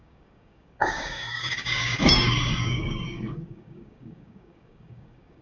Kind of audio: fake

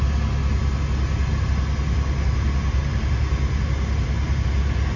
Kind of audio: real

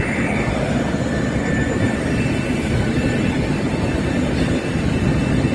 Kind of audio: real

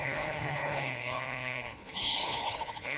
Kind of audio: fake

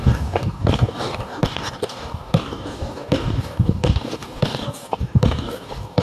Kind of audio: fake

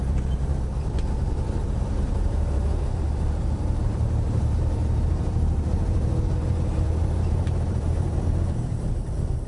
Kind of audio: fake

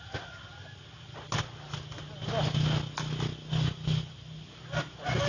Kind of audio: real